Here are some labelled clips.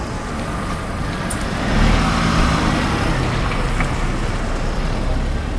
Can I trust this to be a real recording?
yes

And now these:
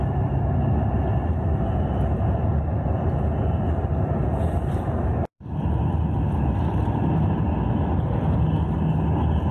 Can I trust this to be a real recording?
yes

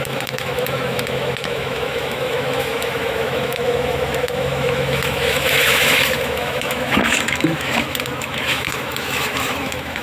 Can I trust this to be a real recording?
no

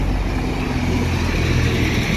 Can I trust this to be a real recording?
yes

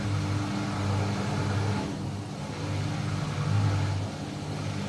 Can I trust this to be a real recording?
yes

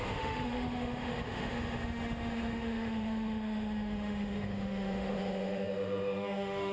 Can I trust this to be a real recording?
no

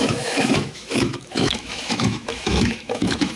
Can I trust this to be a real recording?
no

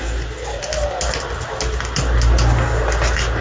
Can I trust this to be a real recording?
yes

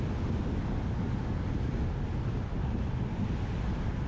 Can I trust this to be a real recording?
yes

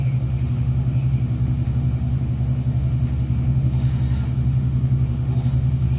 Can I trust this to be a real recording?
no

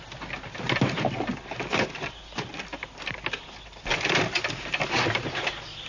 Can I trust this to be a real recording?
yes